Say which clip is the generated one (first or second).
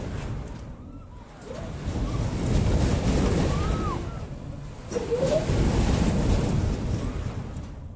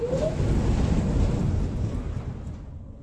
first